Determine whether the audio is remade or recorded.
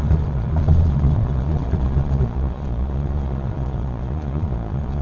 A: remade